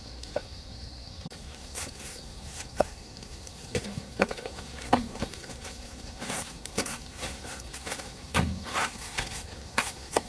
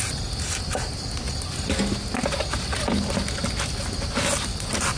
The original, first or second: second